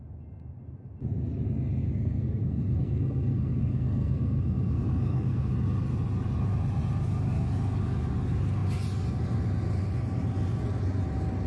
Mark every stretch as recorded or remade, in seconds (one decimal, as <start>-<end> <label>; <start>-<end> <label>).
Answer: 0.0-1.8 recorded; 1.8-5.5 remade; 5.5-11.5 recorded